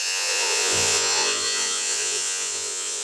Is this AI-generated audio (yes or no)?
yes